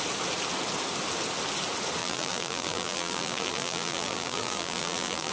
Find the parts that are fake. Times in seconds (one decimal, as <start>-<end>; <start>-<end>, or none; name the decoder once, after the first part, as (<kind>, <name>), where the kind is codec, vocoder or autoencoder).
2.0-5.3 (vocoder, BigVGAN v2)

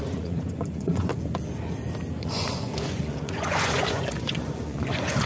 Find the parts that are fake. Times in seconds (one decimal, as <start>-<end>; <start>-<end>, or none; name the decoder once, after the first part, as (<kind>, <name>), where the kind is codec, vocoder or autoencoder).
0.0-1.1 (vocoder, Vocos); 2.2-5.3

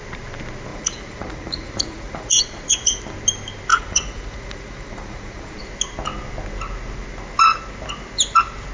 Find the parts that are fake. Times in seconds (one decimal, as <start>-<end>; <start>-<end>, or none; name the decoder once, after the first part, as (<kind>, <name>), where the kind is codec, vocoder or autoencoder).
0.7-3.0 (vocoder, Vocos); 3.7-5.6

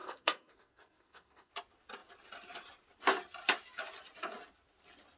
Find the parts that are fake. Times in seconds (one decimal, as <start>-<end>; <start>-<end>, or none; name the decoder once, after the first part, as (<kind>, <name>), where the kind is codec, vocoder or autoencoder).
0.0-1.5 (codec, SNAC)